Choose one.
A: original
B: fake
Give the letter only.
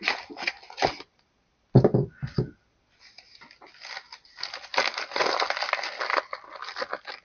A